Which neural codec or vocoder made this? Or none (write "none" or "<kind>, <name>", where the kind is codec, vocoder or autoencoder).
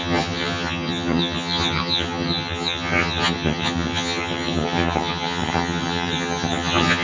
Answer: vocoder, HiFi-GAN